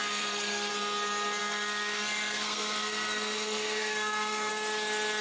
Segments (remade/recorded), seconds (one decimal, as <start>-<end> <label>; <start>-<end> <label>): 0.0-0.7 remade; 0.7-1.4 recorded; 1.4-4.5 remade; 4.5-5.2 recorded